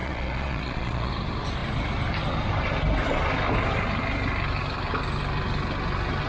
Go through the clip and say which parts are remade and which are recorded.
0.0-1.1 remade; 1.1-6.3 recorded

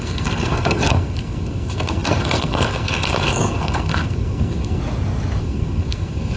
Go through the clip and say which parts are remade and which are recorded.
0.0-4.8 remade; 4.8-5.4 recorded; 5.4-6.4 remade

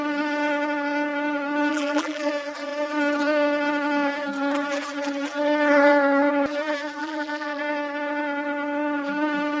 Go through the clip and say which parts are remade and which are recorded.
0.0-1.7 recorded; 1.7-2.3 remade; 2.3-7.0 recorded; 7.0-7.6 remade; 7.6-9.6 recorded

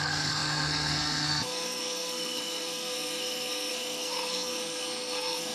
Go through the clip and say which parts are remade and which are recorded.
0.0-5.5 remade

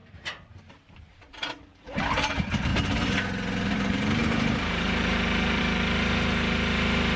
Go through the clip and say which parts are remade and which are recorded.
0.0-2.7 remade; 2.7-3.7 recorded; 3.7-7.2 remade